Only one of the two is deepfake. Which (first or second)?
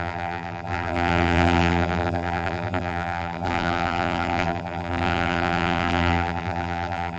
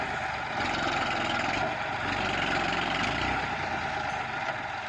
first